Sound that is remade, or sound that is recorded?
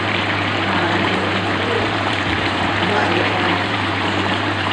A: remade